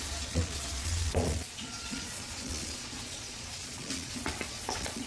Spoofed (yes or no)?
yes